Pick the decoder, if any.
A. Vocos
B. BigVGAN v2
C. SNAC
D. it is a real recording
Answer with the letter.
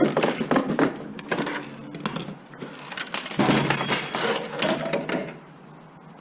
D